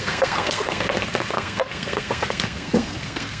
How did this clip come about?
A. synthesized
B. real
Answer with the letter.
A